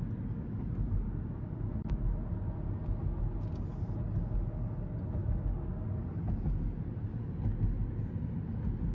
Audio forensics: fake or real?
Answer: real